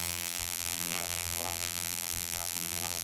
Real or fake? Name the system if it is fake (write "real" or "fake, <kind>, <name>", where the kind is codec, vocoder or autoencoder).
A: fake, vocoder, BigVGAN v2